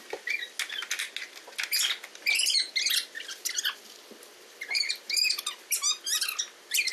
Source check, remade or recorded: recorded